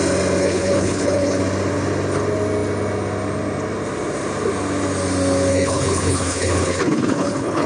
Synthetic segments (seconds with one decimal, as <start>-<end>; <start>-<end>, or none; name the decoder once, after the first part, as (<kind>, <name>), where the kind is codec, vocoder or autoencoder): 0.4-1.4 (codec, HILCodec); 5.5-7.7

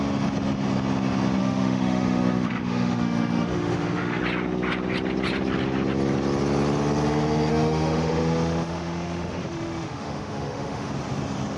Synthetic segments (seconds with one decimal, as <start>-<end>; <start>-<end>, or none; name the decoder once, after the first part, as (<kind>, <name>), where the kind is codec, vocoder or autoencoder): 1.4-4.2 (autoencoder, DAC-VAE); 7.5-10.9

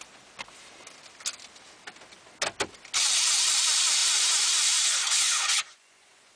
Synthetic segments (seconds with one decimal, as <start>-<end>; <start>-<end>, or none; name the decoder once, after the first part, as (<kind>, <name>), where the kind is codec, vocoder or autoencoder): 4.0-6.4 (vocoder, Vocos)